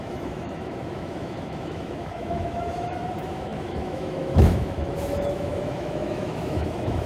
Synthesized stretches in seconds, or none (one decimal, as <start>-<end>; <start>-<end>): 0.0-7.1